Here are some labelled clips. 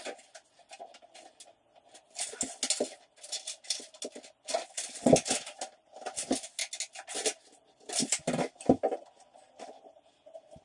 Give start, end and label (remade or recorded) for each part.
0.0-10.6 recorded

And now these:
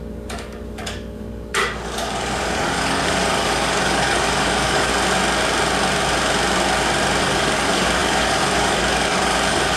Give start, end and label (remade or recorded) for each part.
0.0-4.9 remade; 4.9-7.2 recorded; 7.2-9.8 remade